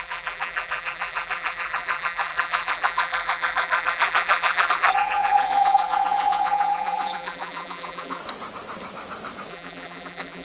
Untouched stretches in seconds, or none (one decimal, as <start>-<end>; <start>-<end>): 8.2-9.5